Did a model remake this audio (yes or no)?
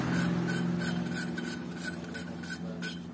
no